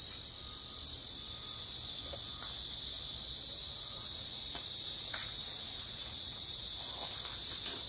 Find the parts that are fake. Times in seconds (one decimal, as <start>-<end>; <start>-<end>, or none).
3.6-6.8